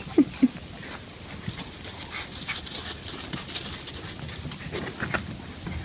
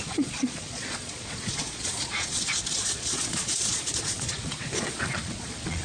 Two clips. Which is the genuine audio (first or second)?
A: first